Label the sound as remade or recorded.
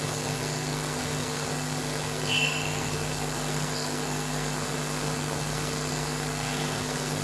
remade